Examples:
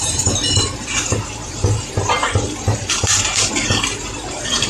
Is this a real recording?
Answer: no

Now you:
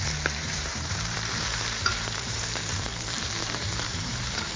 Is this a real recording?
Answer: no